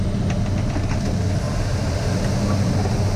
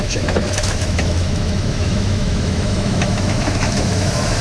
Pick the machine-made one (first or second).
second